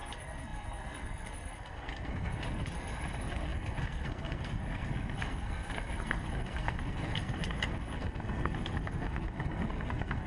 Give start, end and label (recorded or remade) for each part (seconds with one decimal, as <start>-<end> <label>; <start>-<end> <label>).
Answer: 0.0-10.3 remade